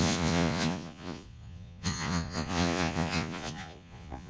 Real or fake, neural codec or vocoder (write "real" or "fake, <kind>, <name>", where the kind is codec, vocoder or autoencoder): fake, vocoder, Vocos